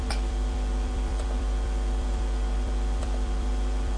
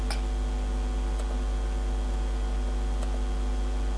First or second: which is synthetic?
first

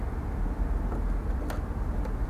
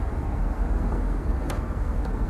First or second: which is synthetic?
second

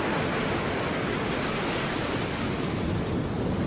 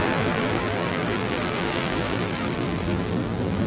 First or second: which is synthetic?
second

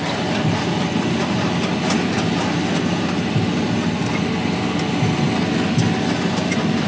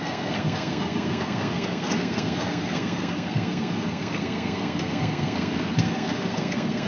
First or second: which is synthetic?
second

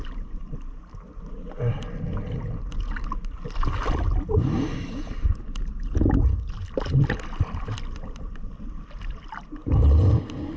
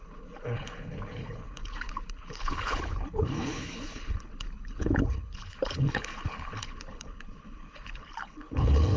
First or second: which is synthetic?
second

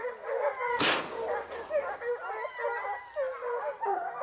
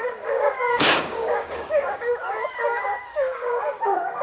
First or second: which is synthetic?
second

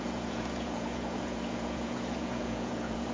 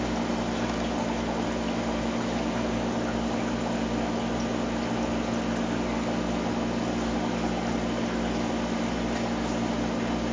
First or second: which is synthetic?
first